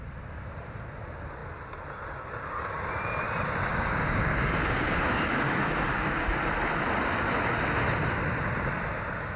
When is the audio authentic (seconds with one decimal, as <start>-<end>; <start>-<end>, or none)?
0.0-3.7; 6.5-9.4